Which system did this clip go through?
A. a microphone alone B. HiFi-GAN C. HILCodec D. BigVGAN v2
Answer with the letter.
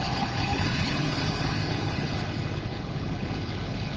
C